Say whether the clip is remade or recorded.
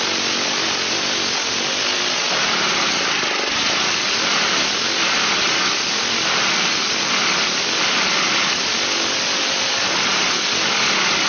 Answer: recorded